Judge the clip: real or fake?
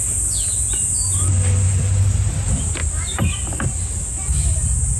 real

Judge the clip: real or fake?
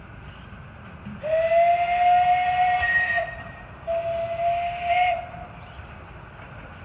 real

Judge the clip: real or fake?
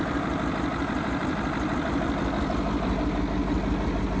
fake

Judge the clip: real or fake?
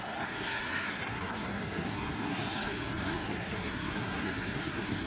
fake